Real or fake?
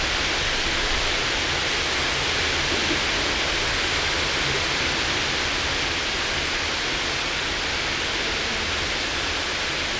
real